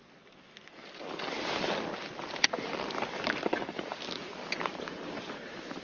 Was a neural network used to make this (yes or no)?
yes